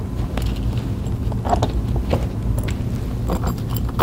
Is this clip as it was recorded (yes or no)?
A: yes